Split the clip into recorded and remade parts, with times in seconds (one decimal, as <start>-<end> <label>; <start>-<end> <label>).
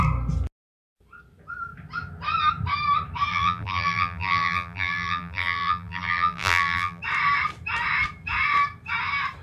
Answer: 0.0-3.3 recorded; 3.3-7.0 remade; 7.0-9.4 recorded